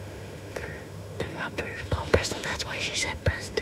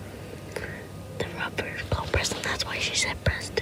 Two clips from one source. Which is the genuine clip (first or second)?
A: second